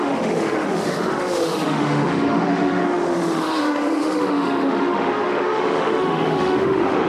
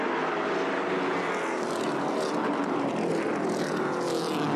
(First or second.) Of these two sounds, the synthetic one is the first